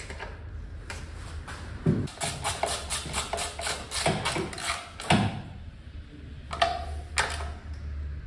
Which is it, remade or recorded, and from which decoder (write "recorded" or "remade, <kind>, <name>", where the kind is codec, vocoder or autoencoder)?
recorded